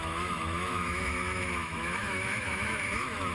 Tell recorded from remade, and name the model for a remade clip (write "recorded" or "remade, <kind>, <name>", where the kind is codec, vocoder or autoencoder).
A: remade, autoencoder, DAC-VAE